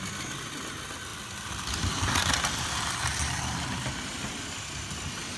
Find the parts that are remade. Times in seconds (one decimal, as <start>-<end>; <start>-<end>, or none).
none